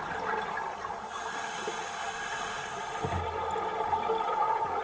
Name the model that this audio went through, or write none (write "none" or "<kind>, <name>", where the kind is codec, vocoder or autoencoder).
none